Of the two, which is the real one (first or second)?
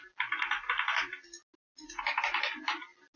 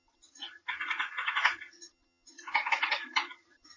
first